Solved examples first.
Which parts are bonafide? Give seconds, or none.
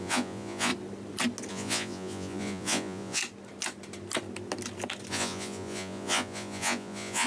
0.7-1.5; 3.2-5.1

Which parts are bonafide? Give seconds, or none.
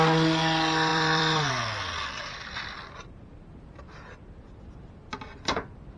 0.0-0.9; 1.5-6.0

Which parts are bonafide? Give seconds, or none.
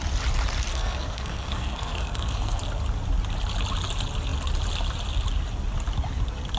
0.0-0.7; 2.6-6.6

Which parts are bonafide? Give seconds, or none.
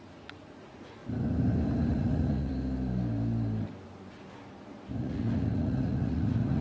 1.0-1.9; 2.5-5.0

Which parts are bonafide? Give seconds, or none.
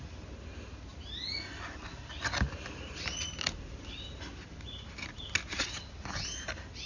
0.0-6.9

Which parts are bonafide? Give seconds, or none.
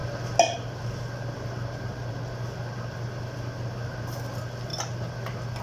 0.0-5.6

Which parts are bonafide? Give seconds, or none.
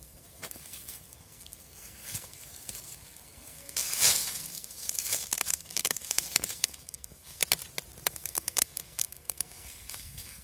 7.4-8.1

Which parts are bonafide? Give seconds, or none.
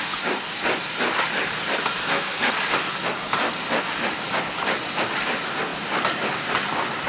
0.0-2.0; 2.5-7.1